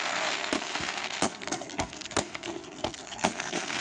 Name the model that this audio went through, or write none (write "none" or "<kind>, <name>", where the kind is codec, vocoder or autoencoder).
codec, SNAC